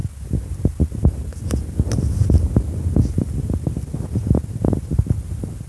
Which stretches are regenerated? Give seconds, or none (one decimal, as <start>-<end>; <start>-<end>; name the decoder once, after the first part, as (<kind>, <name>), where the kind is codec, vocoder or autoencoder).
4.9-5.7 (vocoder, BigVGAN v2)